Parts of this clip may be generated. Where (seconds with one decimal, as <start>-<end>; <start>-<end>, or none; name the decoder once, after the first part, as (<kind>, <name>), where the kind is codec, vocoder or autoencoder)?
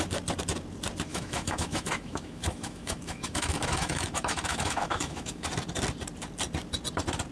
1.1-5.5 (autoencoder, DAC-VAE)